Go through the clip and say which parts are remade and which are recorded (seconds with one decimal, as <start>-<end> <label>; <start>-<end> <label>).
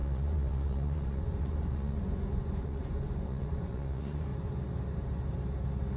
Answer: 0.0-4.3 remade; 4.3-6.0 recorded